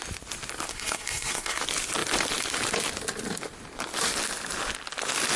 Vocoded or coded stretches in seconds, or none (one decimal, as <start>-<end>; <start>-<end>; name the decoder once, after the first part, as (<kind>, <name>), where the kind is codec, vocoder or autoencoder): 0.7-1.6 (codec, SNAC)